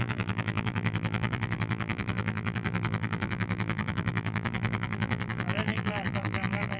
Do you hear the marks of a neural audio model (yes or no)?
yes